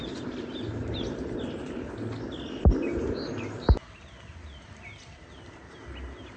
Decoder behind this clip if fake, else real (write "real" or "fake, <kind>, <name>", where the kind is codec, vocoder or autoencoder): real